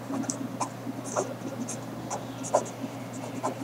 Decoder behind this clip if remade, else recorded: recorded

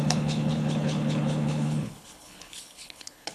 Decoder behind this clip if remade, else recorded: remade, codec, HILCodec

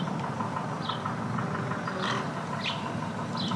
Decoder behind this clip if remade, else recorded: recorded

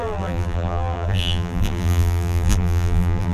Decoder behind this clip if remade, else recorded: remade, vocoder, BigVGAN v2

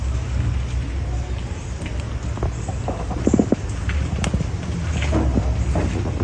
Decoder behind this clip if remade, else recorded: recorded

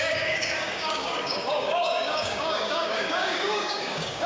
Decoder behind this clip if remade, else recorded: remade, codec, DAC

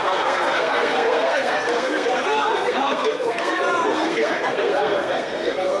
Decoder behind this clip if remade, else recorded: remade, codec, SNAC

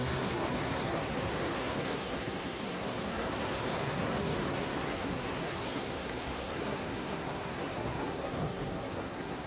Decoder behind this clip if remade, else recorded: remade, codec, SNAC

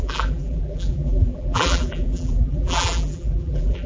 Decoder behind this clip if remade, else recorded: remade, vocoder, BigVGAN v2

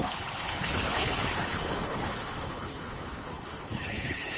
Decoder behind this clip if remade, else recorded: remade, codec, HILCodec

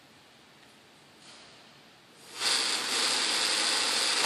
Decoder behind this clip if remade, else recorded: recorded